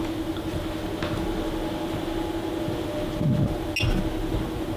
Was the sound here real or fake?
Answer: real